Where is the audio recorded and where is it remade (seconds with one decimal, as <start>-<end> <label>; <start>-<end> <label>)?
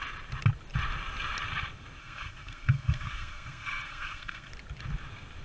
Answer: 0.0-2.0 recorded; 2.0-4.5 remade; 4.5-5.4 recorded